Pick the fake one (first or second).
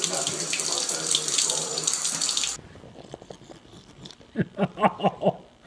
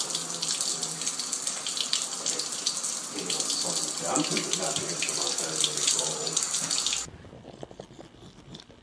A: first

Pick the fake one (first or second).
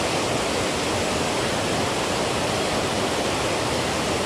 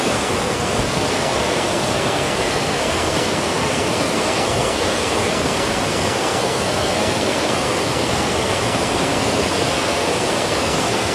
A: second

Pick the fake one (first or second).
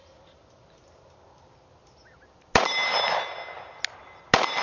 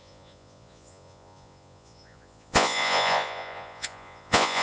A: second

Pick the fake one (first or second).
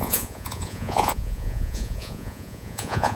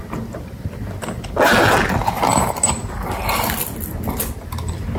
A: first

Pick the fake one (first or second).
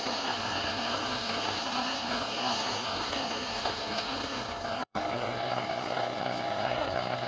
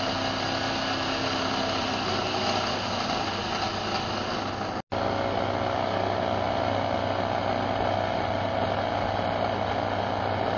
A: first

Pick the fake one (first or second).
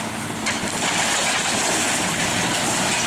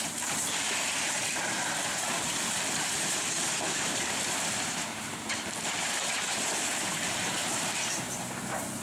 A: second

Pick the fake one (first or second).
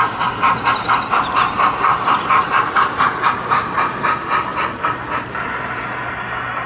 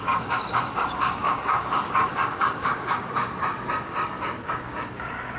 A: second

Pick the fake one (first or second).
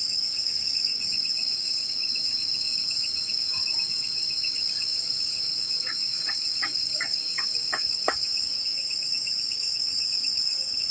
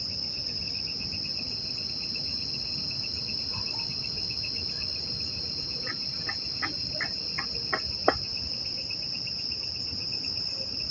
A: first